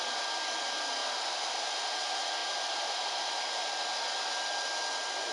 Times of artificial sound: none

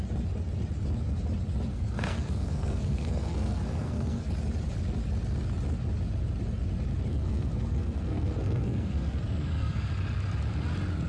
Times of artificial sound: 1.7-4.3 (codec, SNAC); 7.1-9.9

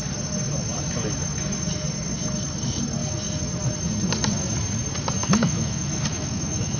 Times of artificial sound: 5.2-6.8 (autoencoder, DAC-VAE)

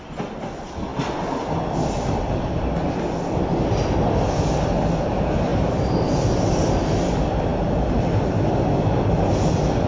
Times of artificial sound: none

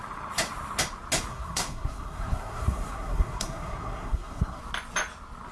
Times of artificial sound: 1.3-4.6 (codec, SNAC)

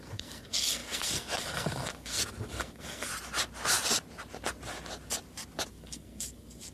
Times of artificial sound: 0.0-3.1 (codec, SNAC); 5.7-6.7

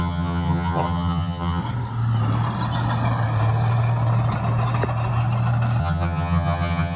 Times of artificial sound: 0.0-1.6 (vocoder, HiFi-GAN); 5.8-7.0